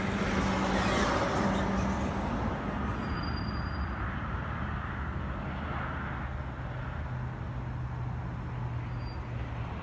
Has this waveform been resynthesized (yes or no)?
no